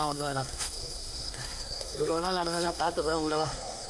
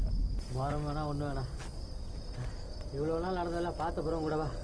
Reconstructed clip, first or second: first